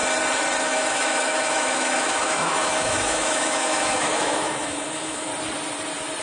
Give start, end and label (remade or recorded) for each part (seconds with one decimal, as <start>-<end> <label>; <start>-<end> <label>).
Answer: 0.0-0.6 recorded; 0.6-5.3 remade; 5.3-6.2 recorded